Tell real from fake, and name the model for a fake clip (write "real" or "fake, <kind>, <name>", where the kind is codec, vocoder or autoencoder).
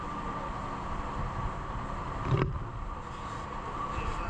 fake, vocoder, BigVGAN v2